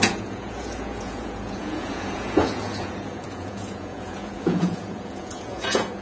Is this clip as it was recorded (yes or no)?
no